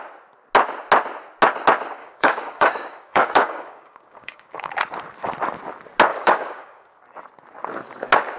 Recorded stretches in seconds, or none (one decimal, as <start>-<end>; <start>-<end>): 0.0-2.0; 4.7-6.1; 7.0-8.4